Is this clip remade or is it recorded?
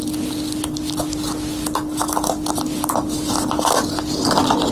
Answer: recorded